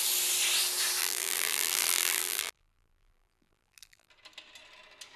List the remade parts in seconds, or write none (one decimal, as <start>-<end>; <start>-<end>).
1.0-4.1